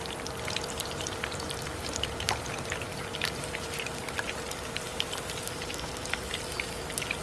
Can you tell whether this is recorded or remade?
recorded